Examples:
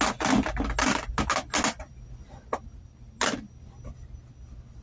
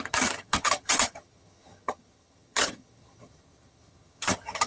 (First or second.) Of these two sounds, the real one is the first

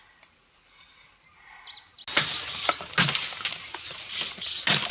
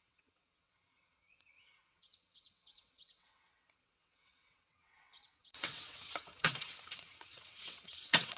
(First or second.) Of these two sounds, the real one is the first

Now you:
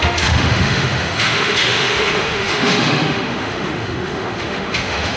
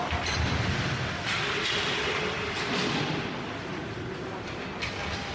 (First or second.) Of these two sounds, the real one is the second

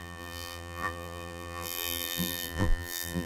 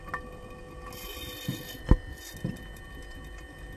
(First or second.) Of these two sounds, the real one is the second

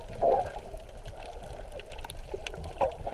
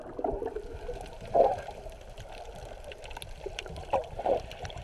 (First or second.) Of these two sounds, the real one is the first